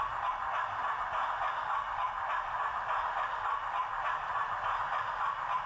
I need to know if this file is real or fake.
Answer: real